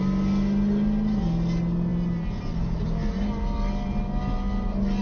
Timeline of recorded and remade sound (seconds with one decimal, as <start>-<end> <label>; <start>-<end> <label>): 0.0-5.0 recorded